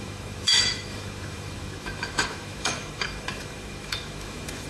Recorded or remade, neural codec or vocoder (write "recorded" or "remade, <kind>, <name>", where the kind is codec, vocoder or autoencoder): remade, autoencoder, DAC-VAE